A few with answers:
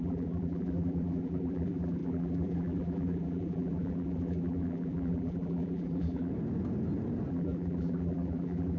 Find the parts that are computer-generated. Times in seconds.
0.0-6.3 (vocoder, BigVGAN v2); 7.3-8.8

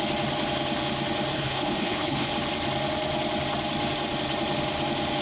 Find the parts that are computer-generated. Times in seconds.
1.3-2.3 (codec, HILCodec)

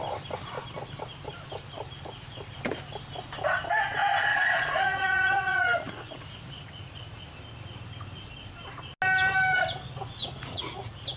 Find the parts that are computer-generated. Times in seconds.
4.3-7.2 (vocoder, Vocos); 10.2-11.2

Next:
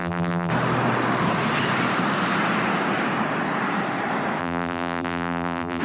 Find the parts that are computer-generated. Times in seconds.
0.0-0.5 (vocoder, BigVGAN v2); 4.4-5.8

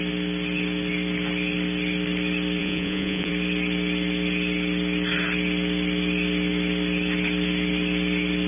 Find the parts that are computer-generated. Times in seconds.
2.6-3.3 (vocoder, Vocos)